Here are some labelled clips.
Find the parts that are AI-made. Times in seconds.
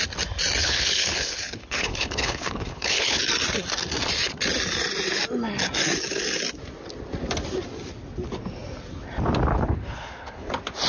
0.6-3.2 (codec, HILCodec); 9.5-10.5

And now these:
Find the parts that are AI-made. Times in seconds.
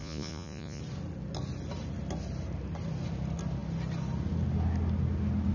0.0-0.8 (vocoder, Vocos)